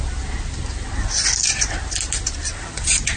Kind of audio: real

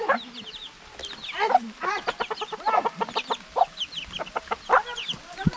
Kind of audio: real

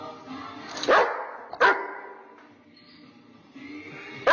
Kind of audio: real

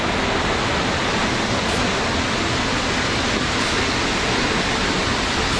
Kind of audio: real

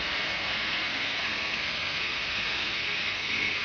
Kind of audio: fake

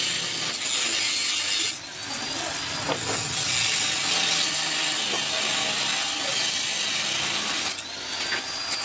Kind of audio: real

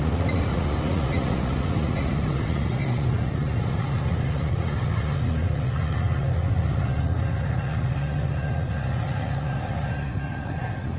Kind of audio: fake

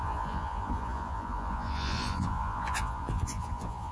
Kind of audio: fake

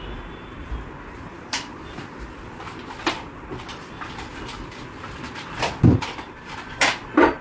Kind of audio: real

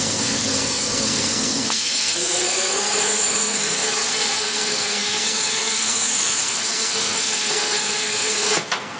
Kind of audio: fake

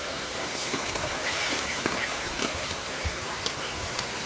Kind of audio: fake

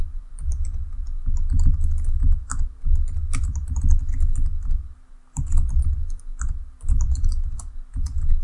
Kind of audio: real